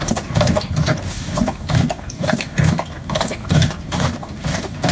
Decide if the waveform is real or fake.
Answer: fake